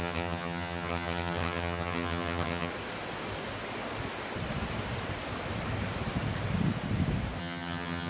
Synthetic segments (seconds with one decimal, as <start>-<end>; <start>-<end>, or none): 0.0-2.7; 7.4-8.1